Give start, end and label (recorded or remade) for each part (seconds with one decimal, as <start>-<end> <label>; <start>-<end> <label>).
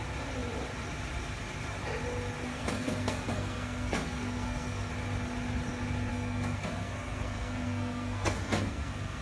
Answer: 0.0-2.5 recorded; 2.5-4.9 remade; 4.9-6.1 recorded; 6.1-9.2 remade